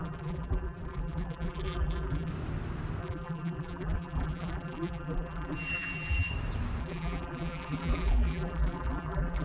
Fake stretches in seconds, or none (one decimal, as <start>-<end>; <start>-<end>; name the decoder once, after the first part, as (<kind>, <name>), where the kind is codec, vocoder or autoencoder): 0.0-2.3 (vocoder, BigVGAN v2); 3.0-6.3; 6.8-9.4